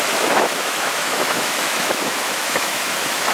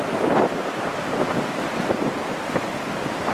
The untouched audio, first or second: second